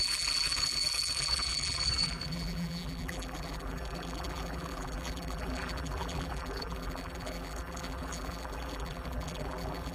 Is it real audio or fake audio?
fake